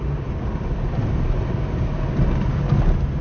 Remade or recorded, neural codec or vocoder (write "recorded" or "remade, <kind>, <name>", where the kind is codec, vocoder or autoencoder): recorded